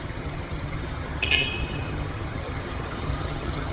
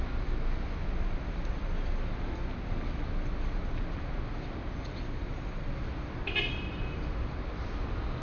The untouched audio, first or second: second